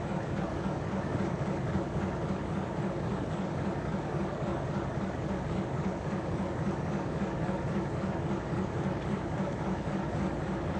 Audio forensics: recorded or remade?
remade